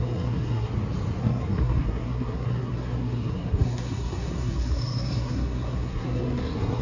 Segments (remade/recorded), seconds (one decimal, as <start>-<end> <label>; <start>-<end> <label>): 0.0-0.7 remade; 0.7-1.2 recorded; 1.2-6.8 remade